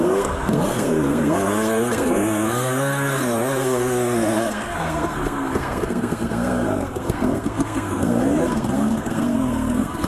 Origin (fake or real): fake